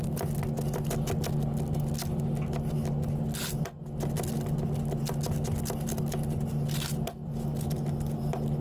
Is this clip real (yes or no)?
yes